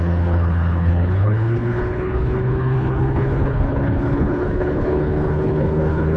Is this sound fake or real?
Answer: fake